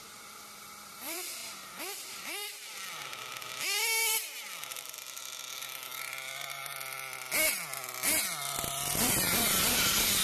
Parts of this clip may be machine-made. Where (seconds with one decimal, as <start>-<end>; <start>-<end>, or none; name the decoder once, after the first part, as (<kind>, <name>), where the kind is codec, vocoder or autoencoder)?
0.0-1.4 (vocoder, BigVGAN v2); 2.1-6.6; 8.6-10.2